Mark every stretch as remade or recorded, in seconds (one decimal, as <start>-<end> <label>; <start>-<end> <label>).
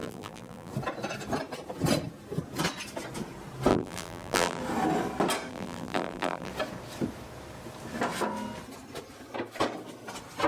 0.0-0.7 remade; 0.7-3.7 recorded; 3.7-4.6 remade; 4.6-5.5 recorded; 5.5-6.5 remade; 6.5-10.5 recorded